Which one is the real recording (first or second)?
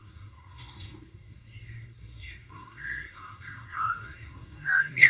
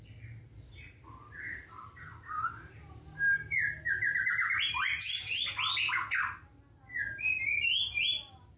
second